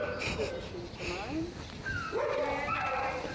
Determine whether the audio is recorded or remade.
recorded